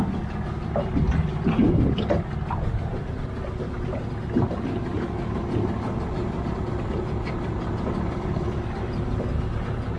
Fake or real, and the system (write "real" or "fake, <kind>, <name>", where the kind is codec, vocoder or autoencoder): real